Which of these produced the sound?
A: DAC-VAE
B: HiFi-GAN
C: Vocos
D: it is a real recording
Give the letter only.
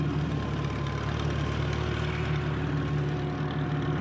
D